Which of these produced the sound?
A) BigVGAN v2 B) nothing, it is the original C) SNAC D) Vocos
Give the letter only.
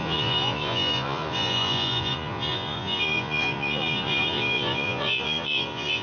D